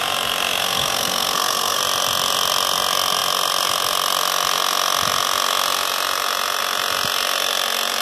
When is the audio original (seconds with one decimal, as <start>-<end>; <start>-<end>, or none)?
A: 0.0-0.6; 1.8-8.0